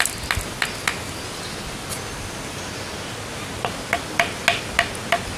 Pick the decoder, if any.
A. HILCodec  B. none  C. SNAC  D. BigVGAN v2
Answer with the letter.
B